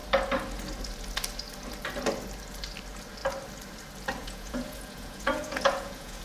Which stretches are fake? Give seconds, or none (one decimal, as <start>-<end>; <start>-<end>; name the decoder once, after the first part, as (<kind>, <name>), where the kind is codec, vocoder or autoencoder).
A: 4.2-6.2 (vocoder, Vocos)